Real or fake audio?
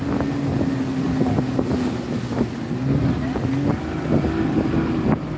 real